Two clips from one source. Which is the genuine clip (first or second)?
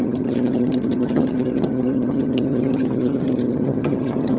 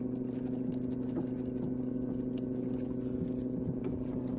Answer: second